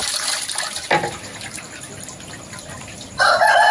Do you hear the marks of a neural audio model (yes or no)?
yes